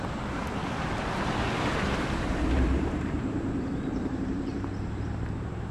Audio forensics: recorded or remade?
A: remade